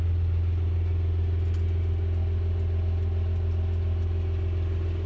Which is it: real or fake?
real